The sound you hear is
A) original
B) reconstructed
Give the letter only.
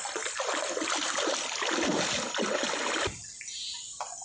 A